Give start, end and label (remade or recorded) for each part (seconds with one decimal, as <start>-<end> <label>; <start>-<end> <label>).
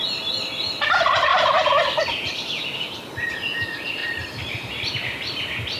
0.0-1.3 remade; 1.3-3.3 recorded; 3.3-5.8 remade